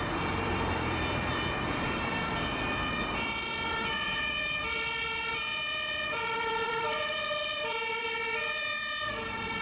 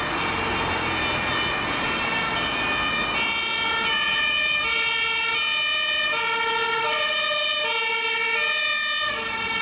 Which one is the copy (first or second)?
first